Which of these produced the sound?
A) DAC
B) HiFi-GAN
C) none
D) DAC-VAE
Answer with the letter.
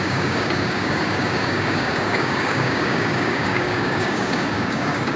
A